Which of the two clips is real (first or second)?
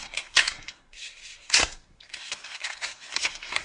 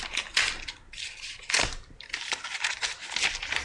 second